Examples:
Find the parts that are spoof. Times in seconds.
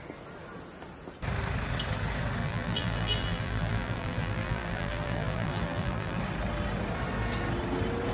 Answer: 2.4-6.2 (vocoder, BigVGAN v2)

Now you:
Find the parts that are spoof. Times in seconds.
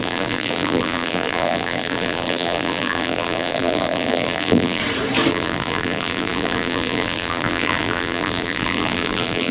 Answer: 0.0-4.8 (vocoder, BigVGAN v2); 5.3-9.5